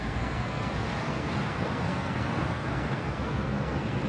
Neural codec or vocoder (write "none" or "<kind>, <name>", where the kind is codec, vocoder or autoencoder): codec, SNAC